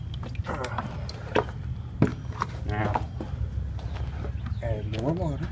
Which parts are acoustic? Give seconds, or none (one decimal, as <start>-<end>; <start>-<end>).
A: 0.0-5.5